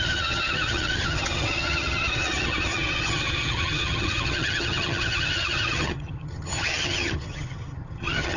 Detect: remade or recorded remade